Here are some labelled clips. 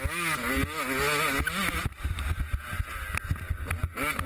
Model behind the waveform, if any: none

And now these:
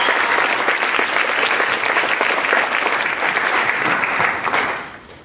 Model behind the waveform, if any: none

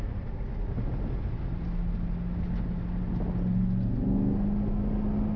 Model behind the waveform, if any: none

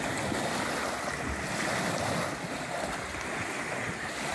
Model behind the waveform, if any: none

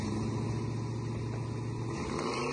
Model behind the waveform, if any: none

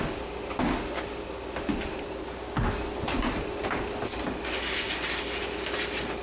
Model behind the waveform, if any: none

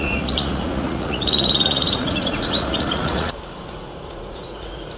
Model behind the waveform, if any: vocoder, Vocos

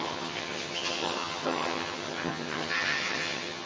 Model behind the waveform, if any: vocoder, HiFi-GAN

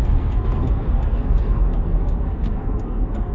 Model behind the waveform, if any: codec, SNAC